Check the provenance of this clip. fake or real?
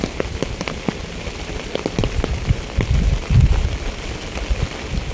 real